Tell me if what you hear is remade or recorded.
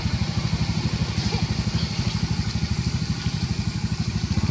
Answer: recorded